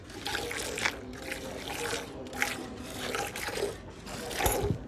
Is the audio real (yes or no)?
yes